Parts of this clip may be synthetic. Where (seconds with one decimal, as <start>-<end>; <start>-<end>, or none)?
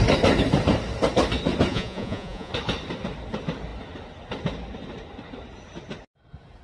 1.7-2.5